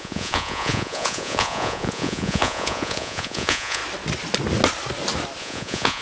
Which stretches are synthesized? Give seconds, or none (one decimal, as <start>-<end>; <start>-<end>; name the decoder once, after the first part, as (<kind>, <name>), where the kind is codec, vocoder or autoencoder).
0.0-3.8 (vocoder, Vocos); 5.4-6.0